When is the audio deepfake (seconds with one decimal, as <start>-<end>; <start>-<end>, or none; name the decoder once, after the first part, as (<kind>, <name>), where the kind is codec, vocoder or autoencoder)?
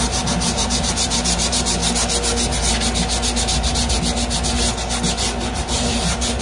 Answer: 0.0-1.8 (vocoder, BigVGAN v2); 5.5-6.4